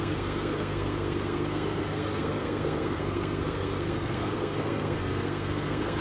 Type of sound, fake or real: fake